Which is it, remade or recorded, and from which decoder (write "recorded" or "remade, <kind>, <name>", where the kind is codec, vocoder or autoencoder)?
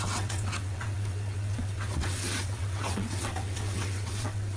remade, vocoder, WaveNeXt